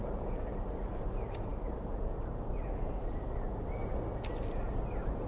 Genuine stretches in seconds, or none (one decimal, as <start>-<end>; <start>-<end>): 0.0-5.3